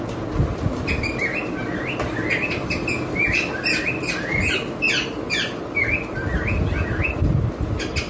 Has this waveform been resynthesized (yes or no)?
no